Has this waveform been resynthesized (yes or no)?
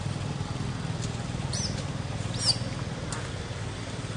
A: no